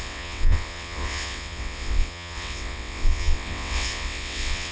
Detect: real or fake fake